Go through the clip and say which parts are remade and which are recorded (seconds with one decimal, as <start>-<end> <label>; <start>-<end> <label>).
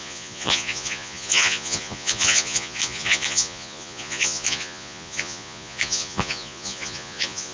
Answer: 0.0-7.5 remade